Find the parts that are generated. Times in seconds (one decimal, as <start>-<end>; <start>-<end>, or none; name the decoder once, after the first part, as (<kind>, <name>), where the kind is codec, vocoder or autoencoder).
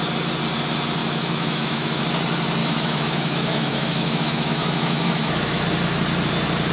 1.0-2.0 (autoencoder, DAC-VAE); 2.6-5.6